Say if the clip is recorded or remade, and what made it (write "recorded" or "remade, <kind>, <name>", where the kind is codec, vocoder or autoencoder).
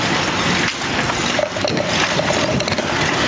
recorded